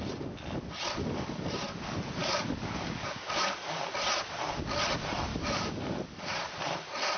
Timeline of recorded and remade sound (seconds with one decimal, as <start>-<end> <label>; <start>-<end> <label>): 0.0-1.0 recorded; 1.0-1.5 remade; 1.5-2.2 recorded; 2.2-3.9 remade; 3.9-5.3 recorded; 5.3-6.3 remade; 6.3-7.2 recorded